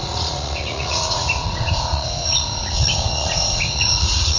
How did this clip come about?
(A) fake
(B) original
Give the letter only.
A